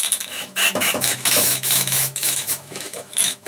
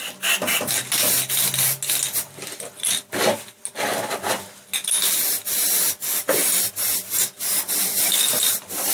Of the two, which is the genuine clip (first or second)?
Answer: second